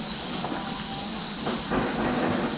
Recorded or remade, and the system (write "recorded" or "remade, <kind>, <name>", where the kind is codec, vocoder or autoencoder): recorded